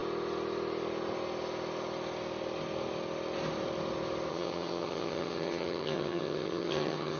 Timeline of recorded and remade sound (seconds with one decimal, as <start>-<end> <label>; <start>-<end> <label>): 0.0-4.3 recorded; 4.3-7.2 remade